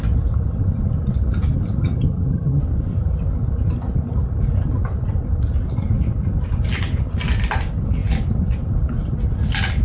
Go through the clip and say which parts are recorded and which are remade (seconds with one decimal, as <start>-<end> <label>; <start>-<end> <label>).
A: 0.0-1.8 recorded; 1.8-2.6 remade; 2.6-9.8 recorded